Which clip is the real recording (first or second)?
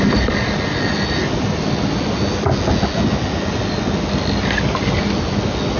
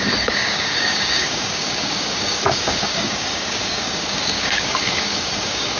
first